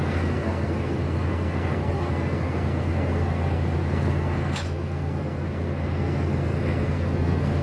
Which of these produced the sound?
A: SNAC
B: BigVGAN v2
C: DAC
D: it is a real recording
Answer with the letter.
A